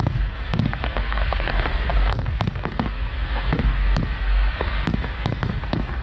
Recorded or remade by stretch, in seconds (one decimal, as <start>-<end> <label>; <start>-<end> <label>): 0.0-6.0 remade

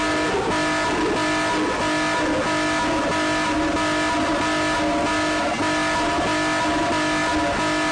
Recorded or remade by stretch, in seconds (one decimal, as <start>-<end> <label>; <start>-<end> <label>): 0.0-7.9 recorded

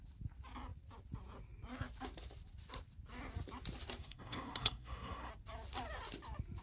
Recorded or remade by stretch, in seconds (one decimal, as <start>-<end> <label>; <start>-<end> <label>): 0.0-4.0 recorded; 4.0-5.3 remade; 5.3-6.6 recorded

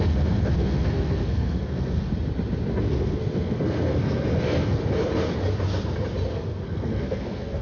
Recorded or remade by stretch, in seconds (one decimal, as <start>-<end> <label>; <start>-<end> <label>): 0.0-2.1 remade; 2.1-2.7 recorded; 2.7-4.8 remade; 4.8-6.3 recorded; 6.3-7.6 remade

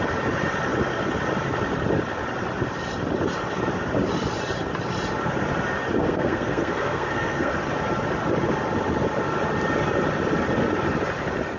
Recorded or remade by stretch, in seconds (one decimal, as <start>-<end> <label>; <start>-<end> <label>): 0.0-6.0 recorded; 6.0-7.5 remade; 7.5-11.6 recorded

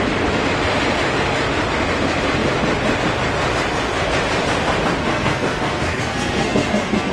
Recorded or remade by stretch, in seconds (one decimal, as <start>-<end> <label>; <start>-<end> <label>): 0.0-5.0 recorded; 5.0-7.1 remade

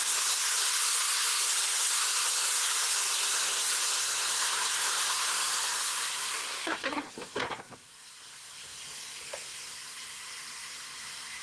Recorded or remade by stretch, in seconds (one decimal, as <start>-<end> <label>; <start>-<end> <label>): 0.0-11.4 remade

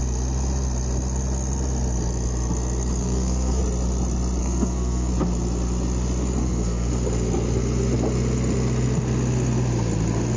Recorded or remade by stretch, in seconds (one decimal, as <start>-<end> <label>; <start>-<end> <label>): 0.0-3.0 recorded; 3.0-3.6 remade; 3.6-4.4 recorded; 4.4-5.1 remade; 5.1-6.4 recorded; 6.4-6.9 remade; 6.9-10.4 recorded